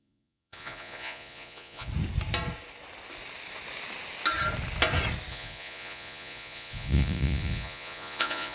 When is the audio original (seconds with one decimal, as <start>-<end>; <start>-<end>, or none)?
1.9-5.3